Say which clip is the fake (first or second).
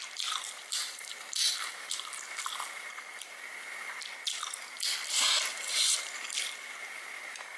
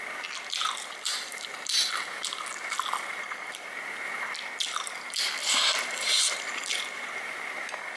first